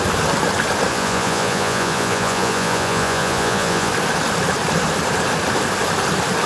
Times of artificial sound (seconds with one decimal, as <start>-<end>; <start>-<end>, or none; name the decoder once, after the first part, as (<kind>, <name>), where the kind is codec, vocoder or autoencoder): 0.9-3.9 (vocoder, Vocos)